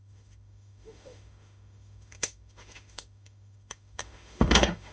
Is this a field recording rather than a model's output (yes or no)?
no